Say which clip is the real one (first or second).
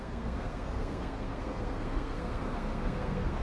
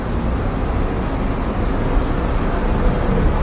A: second